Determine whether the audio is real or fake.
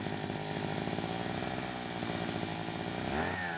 real